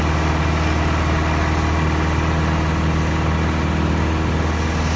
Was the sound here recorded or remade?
recorded